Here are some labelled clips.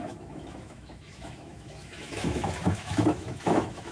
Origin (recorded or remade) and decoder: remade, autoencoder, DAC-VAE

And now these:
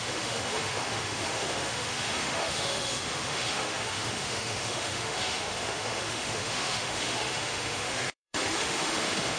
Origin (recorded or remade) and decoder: remade, autoencoder, DAC-VAE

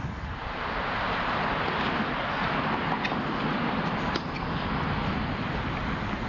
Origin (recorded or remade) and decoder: recorded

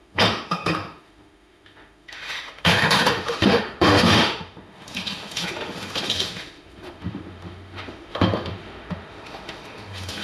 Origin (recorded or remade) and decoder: remade, autoencoder, DAC-VAE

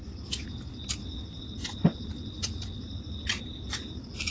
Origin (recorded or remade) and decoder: recorded